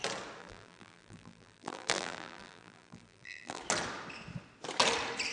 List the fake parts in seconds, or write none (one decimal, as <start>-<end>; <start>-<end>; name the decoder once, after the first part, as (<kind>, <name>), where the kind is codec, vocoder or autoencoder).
0.4-3.6 (vocoder, BigVGAN v2)